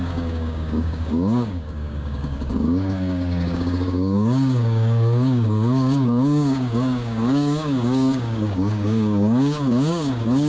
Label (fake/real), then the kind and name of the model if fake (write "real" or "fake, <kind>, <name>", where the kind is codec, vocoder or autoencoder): fake, codec, DAC